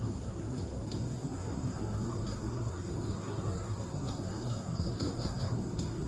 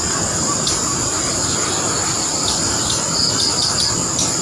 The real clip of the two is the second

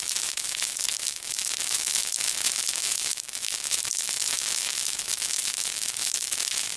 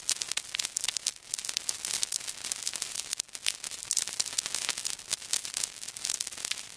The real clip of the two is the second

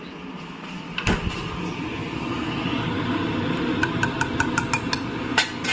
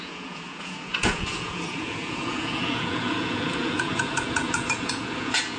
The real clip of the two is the first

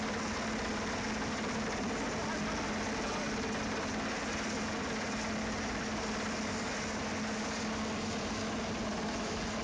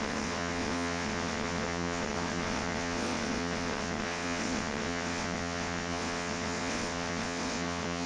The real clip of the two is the first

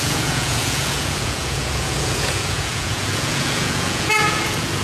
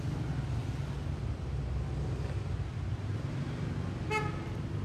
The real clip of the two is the second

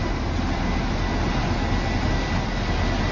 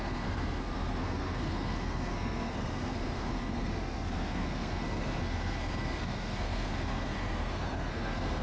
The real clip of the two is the first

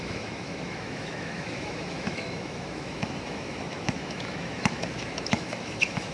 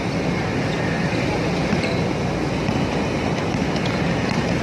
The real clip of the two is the second